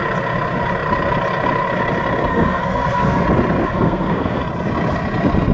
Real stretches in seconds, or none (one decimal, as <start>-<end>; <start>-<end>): 0.0-2.3; 3.2-3.6; 4.4-5.5